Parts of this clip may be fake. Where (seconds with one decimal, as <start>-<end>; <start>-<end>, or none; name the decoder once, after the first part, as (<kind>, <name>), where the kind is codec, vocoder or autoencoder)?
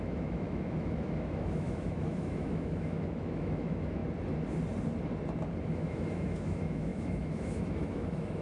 0.0-4.0 (autoencoder, DAC-VAE); 5.6-8.4